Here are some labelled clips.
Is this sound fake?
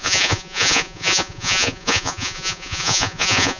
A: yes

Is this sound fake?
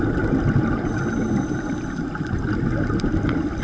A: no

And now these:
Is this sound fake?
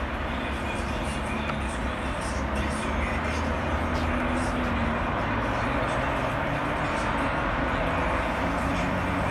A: no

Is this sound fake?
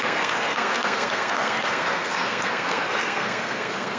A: yes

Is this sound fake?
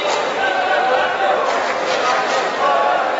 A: no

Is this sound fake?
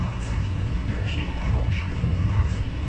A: yes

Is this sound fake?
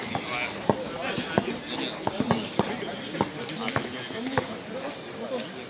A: no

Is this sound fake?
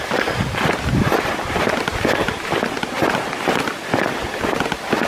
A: no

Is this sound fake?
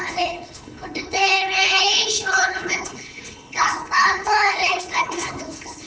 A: yes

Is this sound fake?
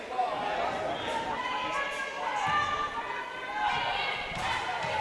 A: no